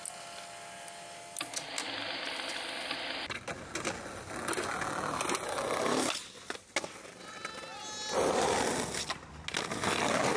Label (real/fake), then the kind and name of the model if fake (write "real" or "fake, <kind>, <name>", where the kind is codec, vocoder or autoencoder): real